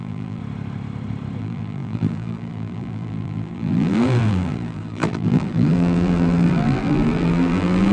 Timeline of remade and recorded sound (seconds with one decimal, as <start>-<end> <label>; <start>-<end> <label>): 0.0-0.4 remade; 0.4-1.4 recorded; 1.4-7.9 remade